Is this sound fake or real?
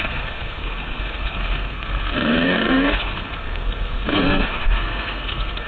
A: fake